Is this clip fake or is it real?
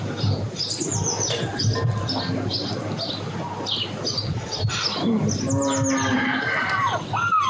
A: real